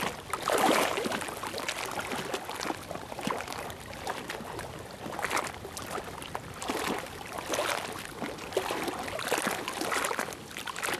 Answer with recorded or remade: recorded